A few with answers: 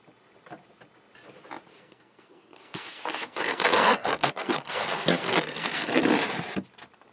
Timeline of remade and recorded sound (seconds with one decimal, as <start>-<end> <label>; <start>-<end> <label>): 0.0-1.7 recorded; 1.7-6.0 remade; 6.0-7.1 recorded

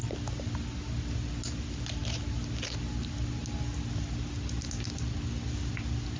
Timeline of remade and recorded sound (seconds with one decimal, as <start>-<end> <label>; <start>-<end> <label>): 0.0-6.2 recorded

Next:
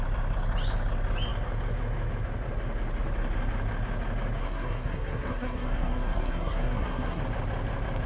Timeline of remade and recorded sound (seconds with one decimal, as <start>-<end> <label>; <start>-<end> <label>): 0.0-4.4 recorded; 4.4-7.2 remade; 7.2-8.1 recorded

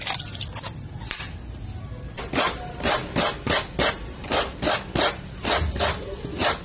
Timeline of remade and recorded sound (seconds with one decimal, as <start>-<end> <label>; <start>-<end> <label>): 0.0-6.6 recorded